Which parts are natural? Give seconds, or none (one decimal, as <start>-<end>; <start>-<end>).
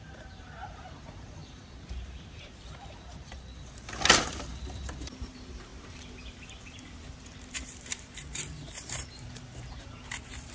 5.7-7.1